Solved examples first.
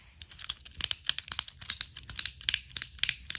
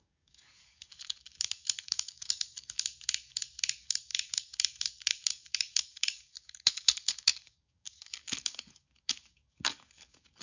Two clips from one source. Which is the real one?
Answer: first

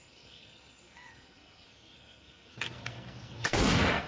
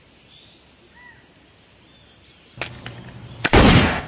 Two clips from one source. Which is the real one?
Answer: second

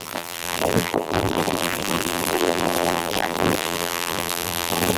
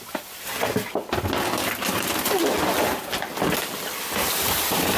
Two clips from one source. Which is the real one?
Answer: second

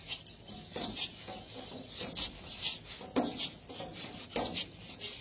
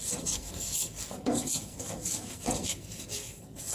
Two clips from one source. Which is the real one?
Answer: first